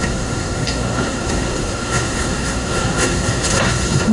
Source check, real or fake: fake